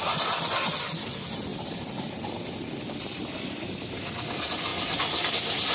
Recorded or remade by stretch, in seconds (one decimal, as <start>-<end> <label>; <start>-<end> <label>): 0.0-1.5 recorded; 1.5-4.1 remade; 4.1-5.7 recorded